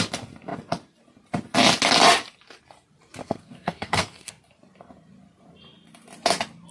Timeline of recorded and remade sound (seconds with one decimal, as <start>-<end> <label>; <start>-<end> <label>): 0.0-3.2 recorded; 3.2-4.3 remade; 4.3-6.7 recorded